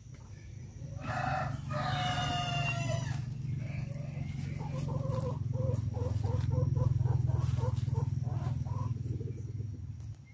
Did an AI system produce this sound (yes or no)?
no